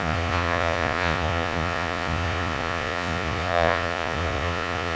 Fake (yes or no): yes